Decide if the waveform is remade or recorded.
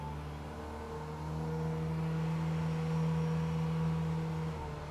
recorded